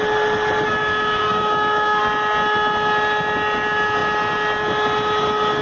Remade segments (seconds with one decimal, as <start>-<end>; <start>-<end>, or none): 0.8-2.0